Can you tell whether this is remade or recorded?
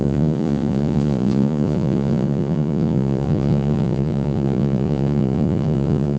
remade